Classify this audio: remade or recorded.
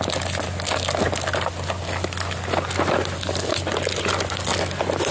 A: recorded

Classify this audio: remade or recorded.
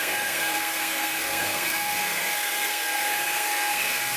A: remade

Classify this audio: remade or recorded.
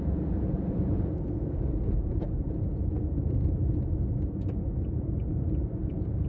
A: remade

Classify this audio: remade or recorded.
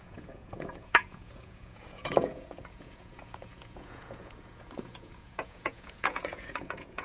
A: remade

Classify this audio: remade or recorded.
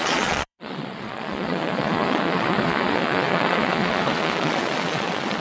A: remade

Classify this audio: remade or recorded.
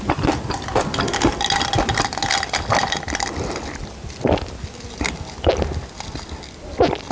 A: recorded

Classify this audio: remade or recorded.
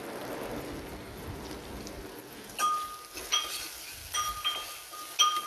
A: recorded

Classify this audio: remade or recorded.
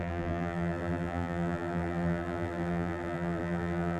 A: remade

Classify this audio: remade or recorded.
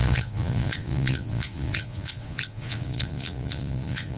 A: remade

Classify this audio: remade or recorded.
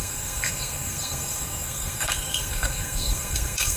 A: remade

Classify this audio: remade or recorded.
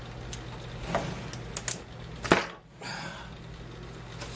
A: recorded